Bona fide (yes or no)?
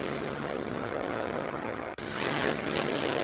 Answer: no